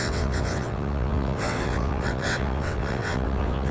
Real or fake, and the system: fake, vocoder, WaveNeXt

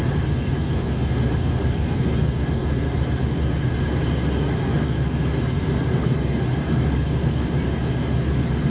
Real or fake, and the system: real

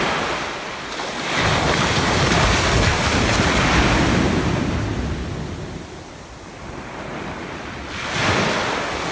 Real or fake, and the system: real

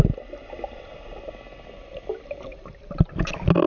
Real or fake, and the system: real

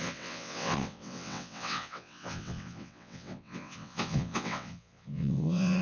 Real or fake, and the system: fake, vocoder, WaveNeXt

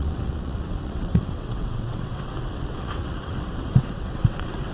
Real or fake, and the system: fake, vocoder, WaveNeXt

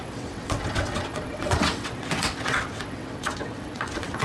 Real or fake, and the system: fake, vocoder, WaveNeXt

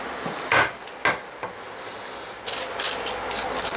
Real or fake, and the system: real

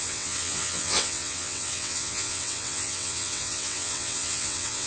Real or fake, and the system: fake, vocoder, WaveNeXt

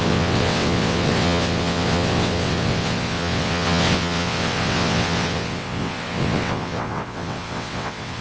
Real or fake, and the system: fake, vocoder, WaveNeXt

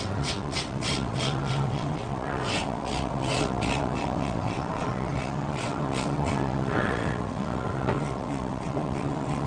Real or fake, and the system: fake, vocoder, WaveNeXt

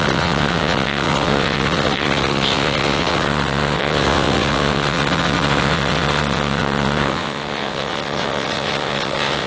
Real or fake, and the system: fake, vocoder, WaveNeXt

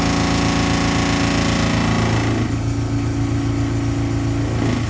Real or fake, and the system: real